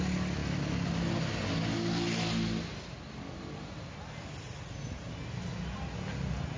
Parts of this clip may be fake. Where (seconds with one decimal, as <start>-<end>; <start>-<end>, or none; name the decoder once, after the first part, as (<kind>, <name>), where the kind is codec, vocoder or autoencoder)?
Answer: none